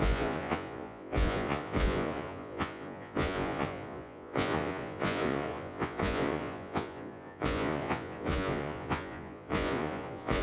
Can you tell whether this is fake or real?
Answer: fake